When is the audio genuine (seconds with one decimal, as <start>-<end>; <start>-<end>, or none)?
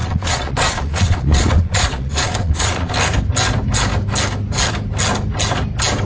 2.9-6.0